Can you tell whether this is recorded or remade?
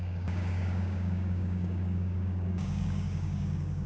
remade